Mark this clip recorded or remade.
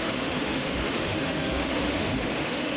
remade